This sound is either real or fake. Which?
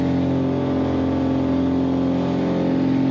real